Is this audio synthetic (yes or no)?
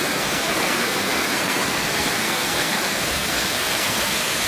yes